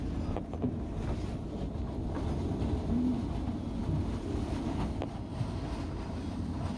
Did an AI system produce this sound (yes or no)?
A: no